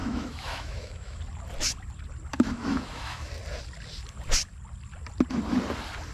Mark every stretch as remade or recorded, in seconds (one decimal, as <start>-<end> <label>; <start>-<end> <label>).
0.0-1.2 remade; 1.2-2.3 recorded; 2.3-3.3 remade; 3.3-6.1 recorded